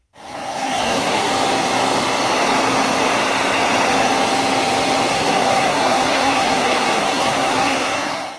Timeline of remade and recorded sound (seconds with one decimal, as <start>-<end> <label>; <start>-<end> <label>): 0.0-1.3 remade; 1.3-5.1 recorded; 5.1-8.4 remade